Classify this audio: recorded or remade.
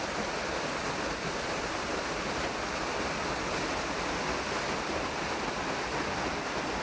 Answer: recorded